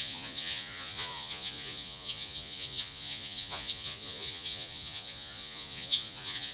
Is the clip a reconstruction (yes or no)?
yes